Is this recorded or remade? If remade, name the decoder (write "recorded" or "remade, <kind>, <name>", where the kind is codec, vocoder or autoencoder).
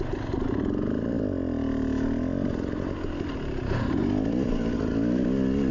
recorded